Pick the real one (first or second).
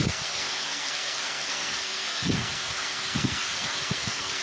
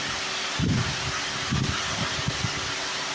second